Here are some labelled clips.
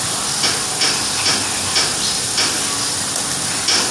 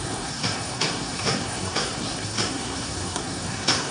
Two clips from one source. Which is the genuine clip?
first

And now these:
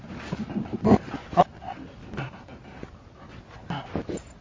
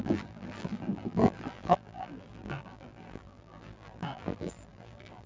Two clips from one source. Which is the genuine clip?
first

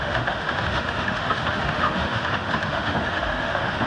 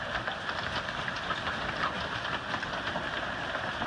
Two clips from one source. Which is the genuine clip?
second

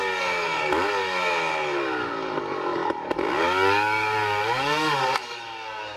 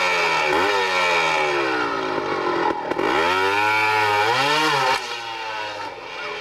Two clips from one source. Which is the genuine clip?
second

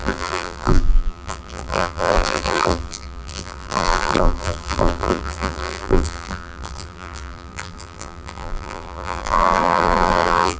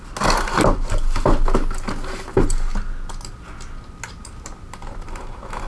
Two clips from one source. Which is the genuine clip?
second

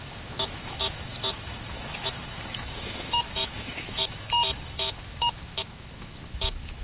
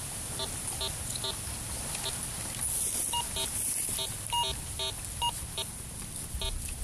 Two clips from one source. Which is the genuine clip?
second